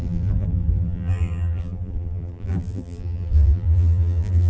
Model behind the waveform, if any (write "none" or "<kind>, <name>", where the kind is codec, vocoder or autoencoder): vocoder, BigVGAN v2